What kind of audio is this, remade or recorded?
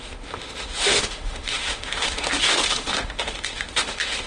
remade